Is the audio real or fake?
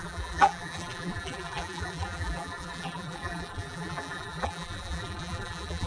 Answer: fake